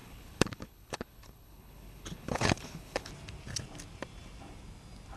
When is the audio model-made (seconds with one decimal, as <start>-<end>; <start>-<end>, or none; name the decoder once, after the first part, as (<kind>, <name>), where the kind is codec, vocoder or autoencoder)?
0.0-3.1 (codec, HILCodec)